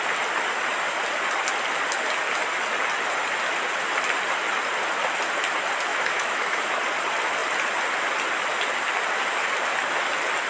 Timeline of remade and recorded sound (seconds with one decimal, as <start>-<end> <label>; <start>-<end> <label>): 0.0-5.9 recorded; 5.9-6.6 remade; 6.6-10.5 recorded